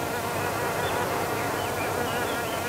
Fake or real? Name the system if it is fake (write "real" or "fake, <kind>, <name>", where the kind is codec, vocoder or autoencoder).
fake, vocoder, BigVGAN v2